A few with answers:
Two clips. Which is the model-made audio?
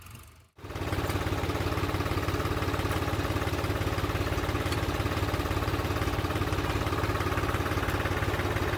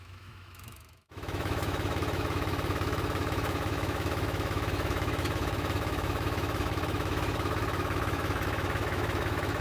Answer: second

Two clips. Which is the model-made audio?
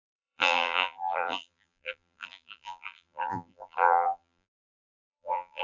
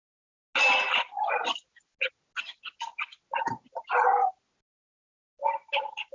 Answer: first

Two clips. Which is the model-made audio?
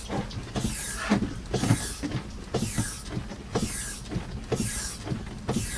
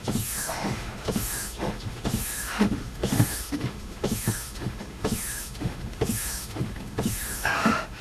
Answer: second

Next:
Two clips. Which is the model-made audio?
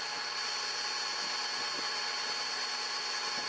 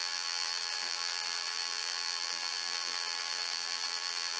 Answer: second